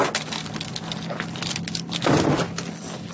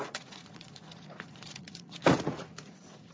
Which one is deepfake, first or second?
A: second